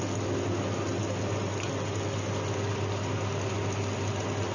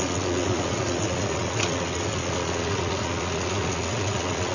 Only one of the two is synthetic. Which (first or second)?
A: second